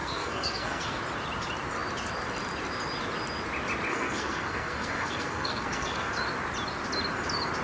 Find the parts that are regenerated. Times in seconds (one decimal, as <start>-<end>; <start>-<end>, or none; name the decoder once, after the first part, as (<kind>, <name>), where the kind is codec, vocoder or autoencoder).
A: 0.0-1.0 (codec, SNAC); 3.9-6.1

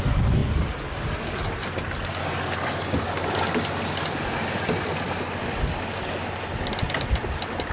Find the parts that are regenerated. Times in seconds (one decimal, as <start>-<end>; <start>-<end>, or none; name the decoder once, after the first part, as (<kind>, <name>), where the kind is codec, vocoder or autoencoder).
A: none

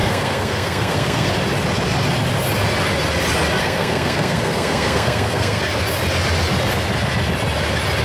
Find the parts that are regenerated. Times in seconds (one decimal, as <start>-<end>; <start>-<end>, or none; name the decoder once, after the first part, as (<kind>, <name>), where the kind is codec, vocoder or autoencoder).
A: 0.0-1.3 (codec, SNAC); 3.6-5.6

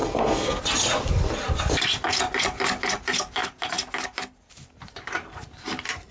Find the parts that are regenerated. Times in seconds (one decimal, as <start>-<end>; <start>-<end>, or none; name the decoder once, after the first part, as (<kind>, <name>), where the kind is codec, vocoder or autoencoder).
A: 0.0-0.6 (codec, SNAC)

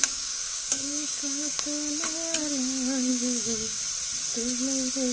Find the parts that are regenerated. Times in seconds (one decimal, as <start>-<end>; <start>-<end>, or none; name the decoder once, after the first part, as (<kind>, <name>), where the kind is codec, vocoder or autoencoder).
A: 0.0-1.6 (codec, DAC); 3.1-3.8

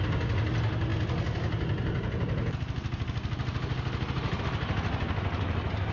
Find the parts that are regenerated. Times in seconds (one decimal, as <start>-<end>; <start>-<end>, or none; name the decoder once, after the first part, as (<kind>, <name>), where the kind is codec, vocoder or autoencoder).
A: none